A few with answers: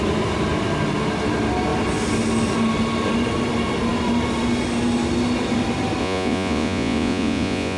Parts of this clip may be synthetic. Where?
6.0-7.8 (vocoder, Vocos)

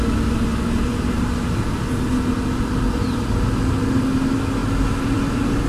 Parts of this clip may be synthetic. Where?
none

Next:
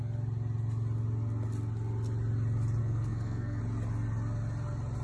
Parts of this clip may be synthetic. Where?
2.8-3.6 (codec, SNAC)

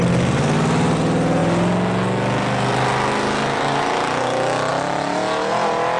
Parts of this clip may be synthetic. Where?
none